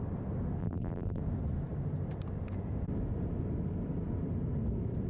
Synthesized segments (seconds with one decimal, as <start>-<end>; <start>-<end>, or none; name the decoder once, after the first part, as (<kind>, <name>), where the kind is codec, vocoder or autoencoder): 0.6-1.2 (vocoder, BigVGAN v2)